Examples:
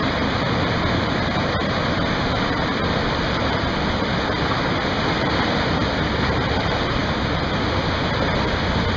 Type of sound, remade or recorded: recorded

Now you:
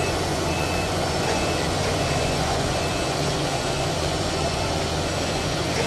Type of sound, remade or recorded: remade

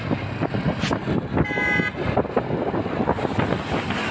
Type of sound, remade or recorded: recorded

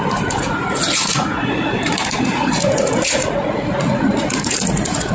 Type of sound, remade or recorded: remade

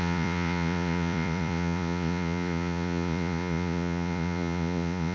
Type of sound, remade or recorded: remade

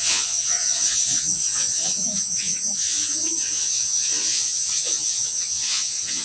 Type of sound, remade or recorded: remade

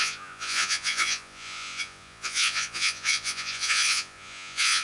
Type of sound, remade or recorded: remade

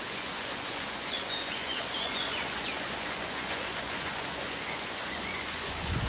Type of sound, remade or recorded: remade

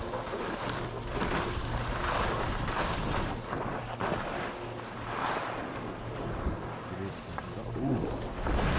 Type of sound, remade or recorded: recorded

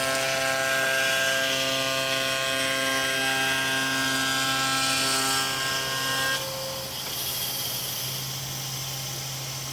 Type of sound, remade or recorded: recorded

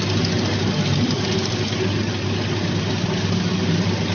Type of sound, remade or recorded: recorded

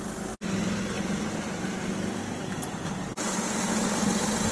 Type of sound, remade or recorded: recorded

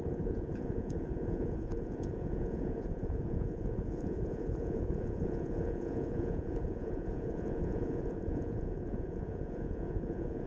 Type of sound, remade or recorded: remade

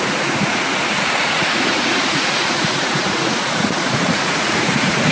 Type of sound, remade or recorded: remade